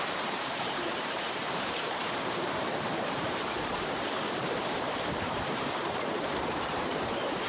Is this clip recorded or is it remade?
remade